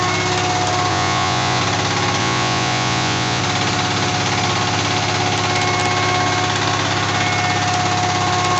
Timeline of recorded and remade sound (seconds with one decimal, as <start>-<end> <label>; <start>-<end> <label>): 0.0-0.9 recorded; 0.9-1.6 remade; 1.6-2.2 recorded; 2.2-3.4 remade; 3.4-8.6 recorded